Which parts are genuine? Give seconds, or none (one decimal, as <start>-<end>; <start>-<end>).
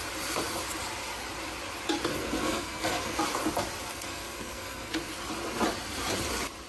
0.0-2.1; 3.2-3.9; 5.1-6.7